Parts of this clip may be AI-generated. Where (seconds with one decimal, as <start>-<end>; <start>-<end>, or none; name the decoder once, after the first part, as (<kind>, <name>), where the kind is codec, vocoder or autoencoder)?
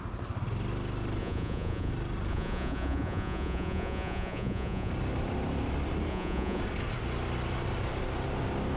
1.2-1.9 (vocoder, Vocos); 2.3-4.9; 6.1-6.6